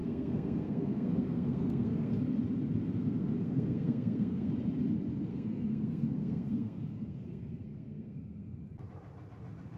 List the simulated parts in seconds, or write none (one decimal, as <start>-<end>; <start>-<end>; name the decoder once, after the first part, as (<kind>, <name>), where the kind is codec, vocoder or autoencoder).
0.0-2.1 (codec, SNAC); 3.0-4.5; 5.3-8.6